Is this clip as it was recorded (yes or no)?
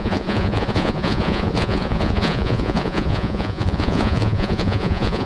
no